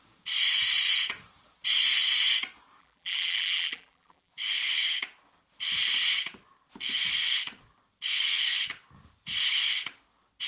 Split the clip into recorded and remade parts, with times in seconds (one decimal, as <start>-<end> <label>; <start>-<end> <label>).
0.0-2.8 recorded; 2.8-4.3 remade; 4.3-10.5 recorded